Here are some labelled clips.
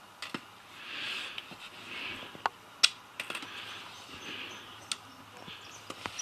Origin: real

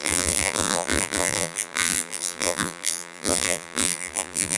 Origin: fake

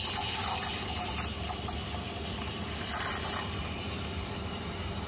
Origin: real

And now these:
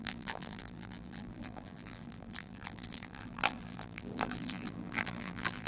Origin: fake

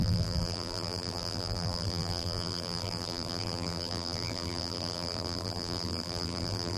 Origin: fake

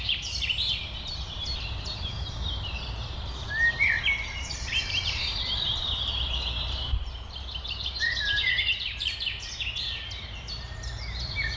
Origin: fake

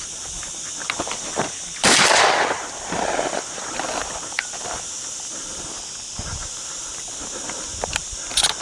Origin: fake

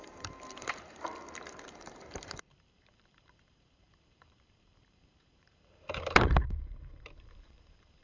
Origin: fake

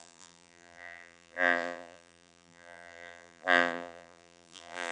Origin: fake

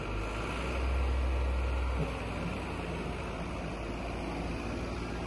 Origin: real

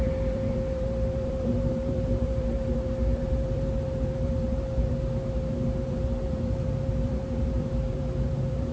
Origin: fake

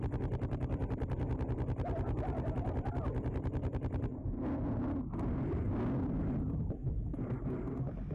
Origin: real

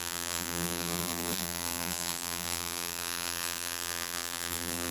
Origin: fake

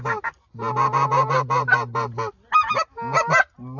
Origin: real